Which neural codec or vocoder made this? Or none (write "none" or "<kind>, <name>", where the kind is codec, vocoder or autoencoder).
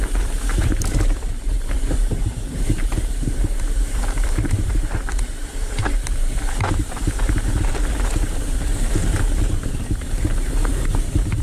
vocoder, BigVGAN v2